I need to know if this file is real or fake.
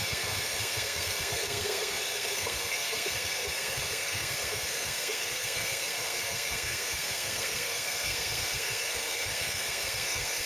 fake